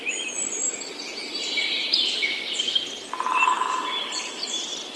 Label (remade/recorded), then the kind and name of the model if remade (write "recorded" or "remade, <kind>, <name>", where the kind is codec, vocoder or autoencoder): remade, vocoder, BigVGAN v2